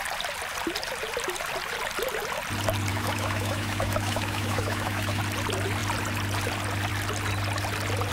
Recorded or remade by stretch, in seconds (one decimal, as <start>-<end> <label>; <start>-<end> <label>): 0.0-2.9 recorded; 2.9-5.2 remade; 5.2-8.1 recorded